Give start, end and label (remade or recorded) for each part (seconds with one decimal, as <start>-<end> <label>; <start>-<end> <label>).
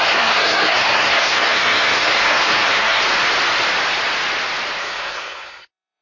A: 0.0-3.0 remade; 3.0-4.8 recorded; 4.8-6.0 remade